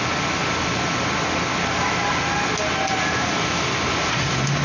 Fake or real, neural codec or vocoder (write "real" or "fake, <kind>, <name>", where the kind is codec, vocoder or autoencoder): real